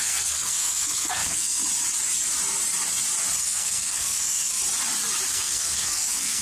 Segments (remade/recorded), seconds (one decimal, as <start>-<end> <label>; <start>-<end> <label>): 0.0-1.6 remade; 1.6-3.4 recorded; 3.4-4.6 remade; 4.6-5.3 recorded; 5.3-6.4 remade